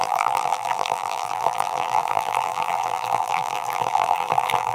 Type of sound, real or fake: fake